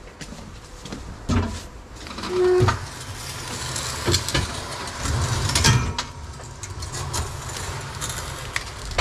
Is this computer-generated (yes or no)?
no